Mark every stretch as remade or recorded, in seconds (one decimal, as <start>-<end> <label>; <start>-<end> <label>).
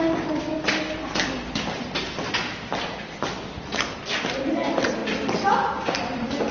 0.0-0.5 recorded; 0.5-1.6 remade; 1.6-2.4 recorded; 2.4-4.0 remade; 4.0-5.0 recorded; 5.0-5.7 remade; 5.7-6.5 recorded